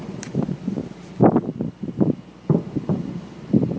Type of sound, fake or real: real